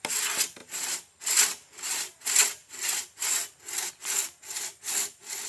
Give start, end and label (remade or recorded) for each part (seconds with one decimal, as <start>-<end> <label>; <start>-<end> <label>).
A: 0.0-5.5 recorded